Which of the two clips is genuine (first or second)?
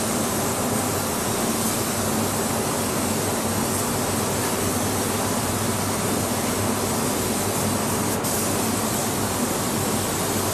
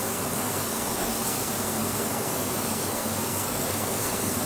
first